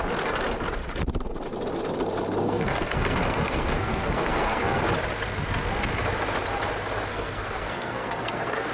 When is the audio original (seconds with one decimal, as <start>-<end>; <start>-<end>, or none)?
0.0-2.4; 4.8-7.1